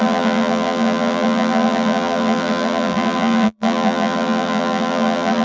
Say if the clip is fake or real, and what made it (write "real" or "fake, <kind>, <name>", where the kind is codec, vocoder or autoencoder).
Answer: fake, vocoder, BigVGAN v2